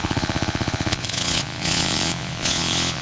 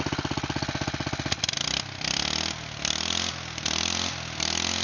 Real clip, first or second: second